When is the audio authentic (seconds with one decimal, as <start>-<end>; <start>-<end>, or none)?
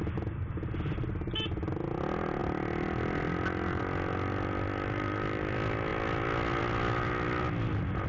0.0-8.1